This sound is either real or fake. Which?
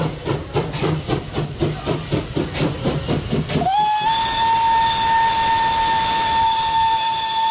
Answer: real